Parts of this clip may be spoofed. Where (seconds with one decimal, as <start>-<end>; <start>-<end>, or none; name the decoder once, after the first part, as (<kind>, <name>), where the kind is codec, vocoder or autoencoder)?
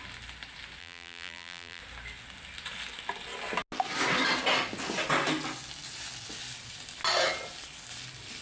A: 0.8-1.8 (vocoder, BigVGAN v2)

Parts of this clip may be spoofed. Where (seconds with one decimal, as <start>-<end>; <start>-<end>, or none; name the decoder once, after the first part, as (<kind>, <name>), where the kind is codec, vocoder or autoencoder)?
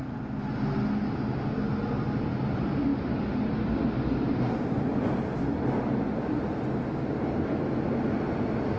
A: none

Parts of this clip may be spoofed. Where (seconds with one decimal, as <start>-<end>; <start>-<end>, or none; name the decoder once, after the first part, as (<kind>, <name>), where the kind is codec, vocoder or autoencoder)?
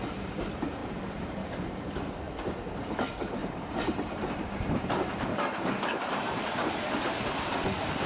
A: 0.8-1.7 (vocoder, BigVGAN v2); 3.4-6.7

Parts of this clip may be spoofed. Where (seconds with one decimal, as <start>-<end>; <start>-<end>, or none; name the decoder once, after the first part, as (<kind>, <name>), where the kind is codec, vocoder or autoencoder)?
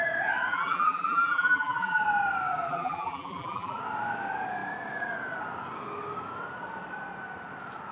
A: 0.5-2.0 (vocoder, BigVGAN v2); 2.7-3.8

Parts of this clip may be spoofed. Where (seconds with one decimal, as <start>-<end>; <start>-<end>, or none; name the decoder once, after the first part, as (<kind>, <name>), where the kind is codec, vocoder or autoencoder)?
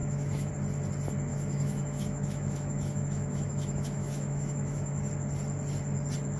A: 0.0-0.5 (autoencoder, DAC-VAE); 1.3-5.1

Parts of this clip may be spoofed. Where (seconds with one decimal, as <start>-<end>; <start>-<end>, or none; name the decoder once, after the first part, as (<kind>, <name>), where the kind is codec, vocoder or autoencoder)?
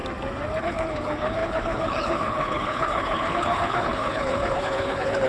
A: 0.6-5.3 (codec, HILCodec)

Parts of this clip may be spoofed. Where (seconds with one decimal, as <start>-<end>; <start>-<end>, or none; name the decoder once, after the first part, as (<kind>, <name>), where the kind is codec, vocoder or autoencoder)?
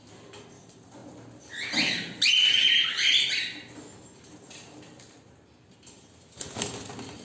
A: none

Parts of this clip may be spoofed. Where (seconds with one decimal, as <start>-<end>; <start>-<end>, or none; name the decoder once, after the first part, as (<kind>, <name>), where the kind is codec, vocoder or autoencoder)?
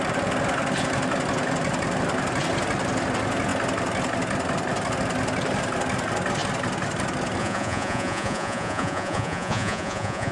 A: 7.4-10.3 (vocoder, Vocos)